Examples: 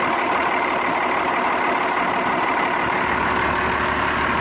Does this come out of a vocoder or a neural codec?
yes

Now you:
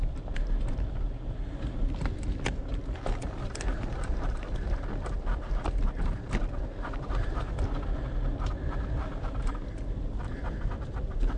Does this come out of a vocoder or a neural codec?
no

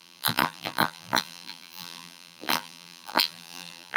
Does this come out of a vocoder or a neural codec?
yes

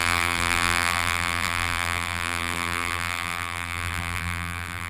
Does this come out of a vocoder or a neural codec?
yes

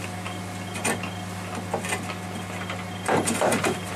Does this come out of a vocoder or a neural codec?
no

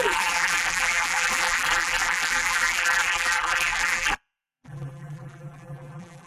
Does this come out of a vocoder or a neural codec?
yes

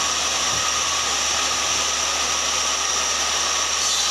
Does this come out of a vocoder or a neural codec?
no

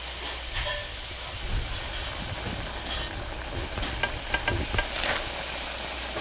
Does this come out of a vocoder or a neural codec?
no